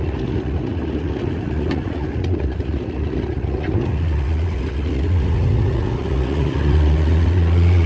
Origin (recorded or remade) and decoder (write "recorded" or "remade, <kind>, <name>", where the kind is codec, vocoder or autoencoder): remade, vocoder, Vocos